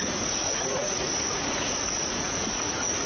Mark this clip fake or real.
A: fake